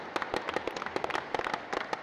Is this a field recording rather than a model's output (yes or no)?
yes